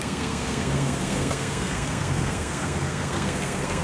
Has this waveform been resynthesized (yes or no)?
yes